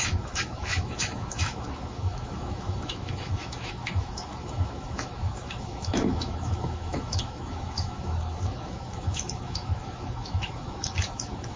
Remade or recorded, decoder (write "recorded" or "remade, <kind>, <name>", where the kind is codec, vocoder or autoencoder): remade, autoencoder, DAC-VAE